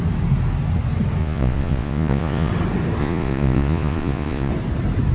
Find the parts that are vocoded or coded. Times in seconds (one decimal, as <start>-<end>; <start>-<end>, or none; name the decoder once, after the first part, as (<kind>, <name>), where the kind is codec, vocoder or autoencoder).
1.2-2.5 (vocoder, Vocos); 3.0-4.5